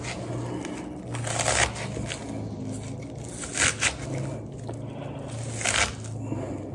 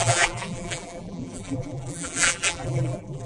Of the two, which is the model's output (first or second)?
second